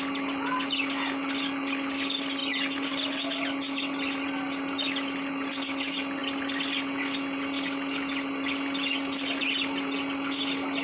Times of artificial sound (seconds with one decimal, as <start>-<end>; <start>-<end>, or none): none